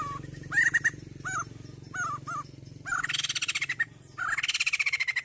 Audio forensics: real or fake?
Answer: real